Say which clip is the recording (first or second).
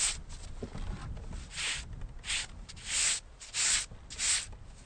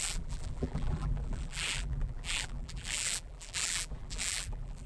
first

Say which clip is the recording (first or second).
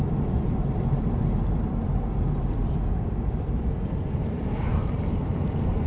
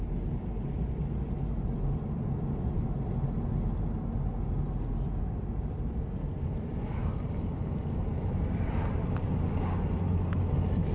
second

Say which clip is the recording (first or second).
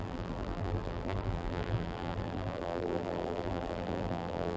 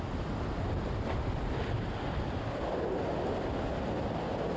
second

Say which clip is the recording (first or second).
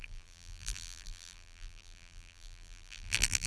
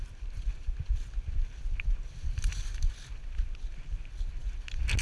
second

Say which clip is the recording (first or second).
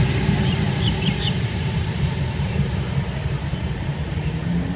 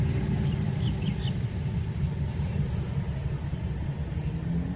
second